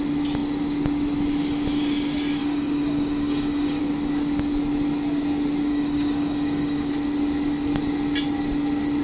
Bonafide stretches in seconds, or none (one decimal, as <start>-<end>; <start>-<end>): 0.0-2.4; 3.8-5.7; 6.9-9.0